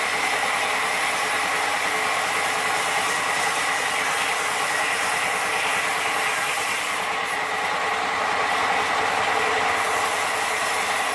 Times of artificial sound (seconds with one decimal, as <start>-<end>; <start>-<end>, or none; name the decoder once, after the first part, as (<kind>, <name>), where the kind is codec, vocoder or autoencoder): none